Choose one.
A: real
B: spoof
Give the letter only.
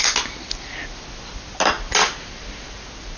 A